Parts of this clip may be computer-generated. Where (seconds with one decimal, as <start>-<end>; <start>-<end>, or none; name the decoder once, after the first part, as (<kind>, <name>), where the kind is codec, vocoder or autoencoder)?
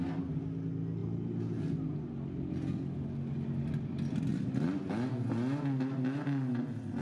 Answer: none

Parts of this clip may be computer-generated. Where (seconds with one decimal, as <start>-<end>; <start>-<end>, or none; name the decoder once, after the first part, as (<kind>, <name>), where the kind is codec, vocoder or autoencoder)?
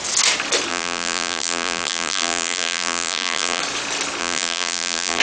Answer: 0.7-3.6 (vocoder, BigVGAN v2); 4.2-5.2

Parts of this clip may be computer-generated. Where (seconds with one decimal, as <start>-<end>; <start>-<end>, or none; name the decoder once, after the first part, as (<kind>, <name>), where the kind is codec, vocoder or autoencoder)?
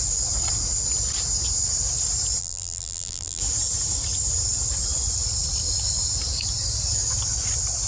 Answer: 2.4-3.4 (vocoder, BigVGAN v2)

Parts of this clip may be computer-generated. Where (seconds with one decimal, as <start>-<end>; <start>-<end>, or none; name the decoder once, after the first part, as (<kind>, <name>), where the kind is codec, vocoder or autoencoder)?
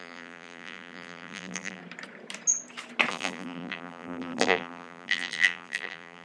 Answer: 0.0-1.8 (vocoder, BigVGAN v2); 3.1-6.2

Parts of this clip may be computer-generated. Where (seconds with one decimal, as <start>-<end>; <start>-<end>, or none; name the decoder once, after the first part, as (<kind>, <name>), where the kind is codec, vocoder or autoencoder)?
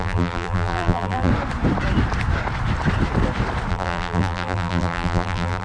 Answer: 0.0-1.3 (vocoder, BigVGAN v2); 3.7-5.6